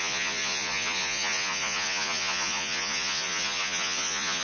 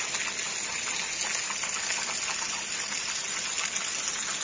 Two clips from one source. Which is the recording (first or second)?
second